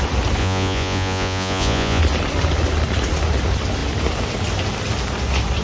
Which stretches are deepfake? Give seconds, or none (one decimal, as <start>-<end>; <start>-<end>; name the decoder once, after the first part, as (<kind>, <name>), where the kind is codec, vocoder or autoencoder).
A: 0.4-2.0 (vocoder, Vocos)